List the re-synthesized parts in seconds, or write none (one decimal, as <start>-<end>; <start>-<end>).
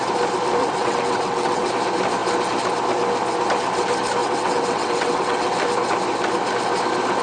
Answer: 0.6-1.7; 4.2-5.5